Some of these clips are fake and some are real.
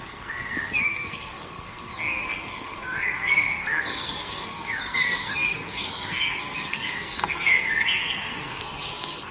fake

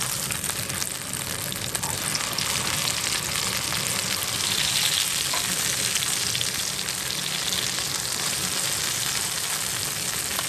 real